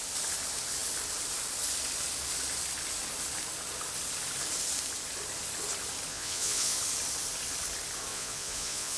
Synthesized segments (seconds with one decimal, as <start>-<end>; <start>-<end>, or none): 6.1-6.8; 8.1-9.0